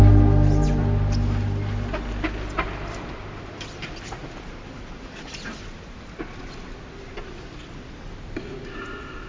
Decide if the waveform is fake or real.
real